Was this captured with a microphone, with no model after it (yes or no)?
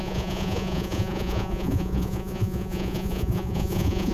no